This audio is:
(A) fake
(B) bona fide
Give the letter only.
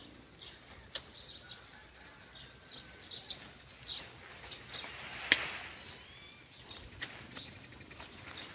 B